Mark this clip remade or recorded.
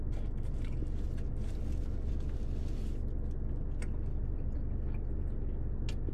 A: recorded